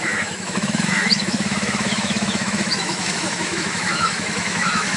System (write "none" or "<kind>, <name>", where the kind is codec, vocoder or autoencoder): autoencoder, DAC-VAE